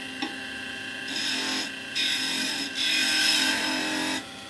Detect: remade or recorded recorded